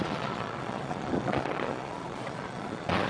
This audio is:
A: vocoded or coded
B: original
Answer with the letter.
A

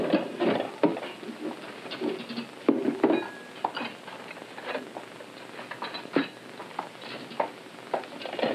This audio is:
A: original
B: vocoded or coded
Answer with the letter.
A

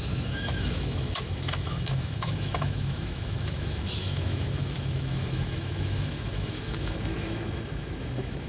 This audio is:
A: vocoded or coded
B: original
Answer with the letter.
A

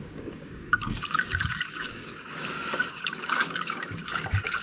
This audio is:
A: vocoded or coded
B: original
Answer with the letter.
A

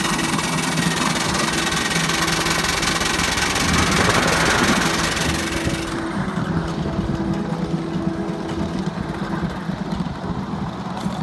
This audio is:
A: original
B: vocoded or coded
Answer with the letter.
A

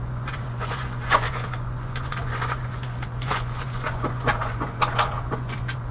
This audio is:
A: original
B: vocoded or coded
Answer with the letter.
B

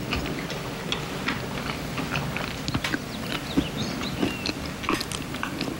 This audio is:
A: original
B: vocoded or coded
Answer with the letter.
A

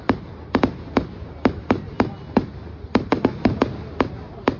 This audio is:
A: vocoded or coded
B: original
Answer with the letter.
B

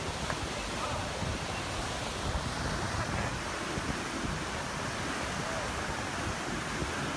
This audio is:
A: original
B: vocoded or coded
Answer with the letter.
A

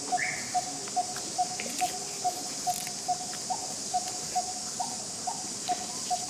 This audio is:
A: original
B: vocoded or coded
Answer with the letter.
A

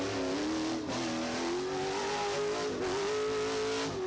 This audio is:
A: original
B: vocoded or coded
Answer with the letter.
A